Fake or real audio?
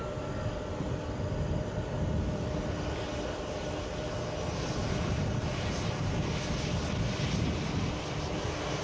real